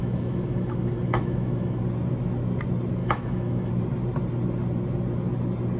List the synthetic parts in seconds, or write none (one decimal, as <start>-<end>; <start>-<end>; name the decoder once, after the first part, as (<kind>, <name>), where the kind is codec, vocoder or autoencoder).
0.0-1.8 (autoencoder, DAC-VAE); 3.0-3.7